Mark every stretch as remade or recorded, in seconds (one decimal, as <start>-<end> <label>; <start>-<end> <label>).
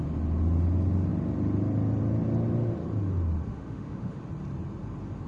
0.0-3.5 recorded; 3.5-4.2 remade; 4.2-5.3 recorded